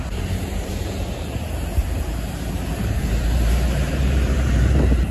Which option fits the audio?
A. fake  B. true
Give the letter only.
A